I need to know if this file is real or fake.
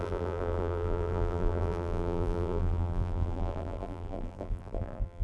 fake